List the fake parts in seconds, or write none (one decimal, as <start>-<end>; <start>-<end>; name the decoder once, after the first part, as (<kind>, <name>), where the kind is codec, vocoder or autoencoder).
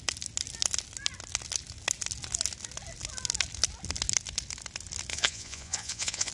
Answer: 5.1-6.3 (vocoder, Vocos)